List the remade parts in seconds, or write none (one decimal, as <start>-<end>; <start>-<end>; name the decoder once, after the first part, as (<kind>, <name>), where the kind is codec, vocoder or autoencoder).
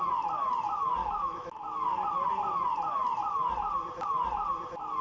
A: 1.0-1.6 (autoencoder, DAC-VAE)